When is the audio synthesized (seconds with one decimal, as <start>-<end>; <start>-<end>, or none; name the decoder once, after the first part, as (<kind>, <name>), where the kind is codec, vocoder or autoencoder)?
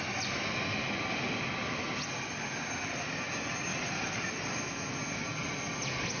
3.7-4.6 (vocoder, BigVGAN v2)